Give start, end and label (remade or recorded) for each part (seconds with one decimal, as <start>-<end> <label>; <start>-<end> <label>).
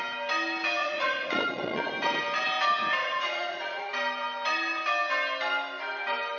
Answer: 0.0-0.8 recorded; 0.8-1.9 remade; 1.9-3.0 recorded; 3.0-3.9 remade; 3.9-6.4 recorded